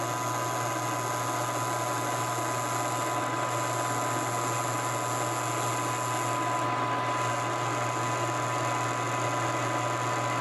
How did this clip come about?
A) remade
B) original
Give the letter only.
B